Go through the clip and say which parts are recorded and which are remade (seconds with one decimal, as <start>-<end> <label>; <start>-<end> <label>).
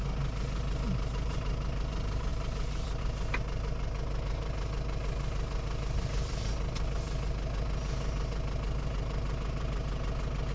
0.0-2.3 recorded; 2.3-3.0 remade; 3.0-10.5 recorded